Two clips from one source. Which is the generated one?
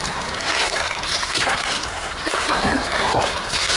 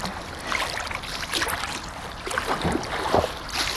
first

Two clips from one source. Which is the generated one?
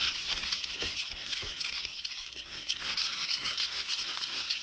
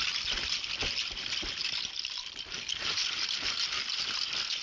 first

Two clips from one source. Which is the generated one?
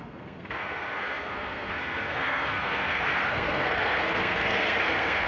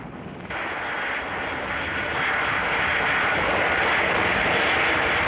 first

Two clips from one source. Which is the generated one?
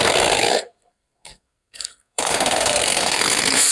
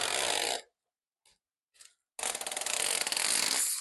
first